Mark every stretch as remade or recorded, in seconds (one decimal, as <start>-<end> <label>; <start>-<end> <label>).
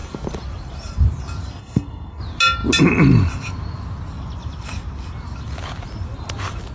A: 0.0-1.6 recorded; 1.6-2.2 remade; 2.2-6.7 recorded